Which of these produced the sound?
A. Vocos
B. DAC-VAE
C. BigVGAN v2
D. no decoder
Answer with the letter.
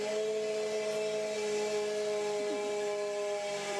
D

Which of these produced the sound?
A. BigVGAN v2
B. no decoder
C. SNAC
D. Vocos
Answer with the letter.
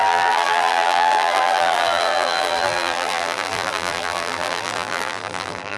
A